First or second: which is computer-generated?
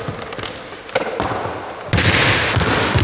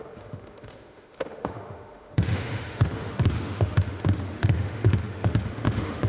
second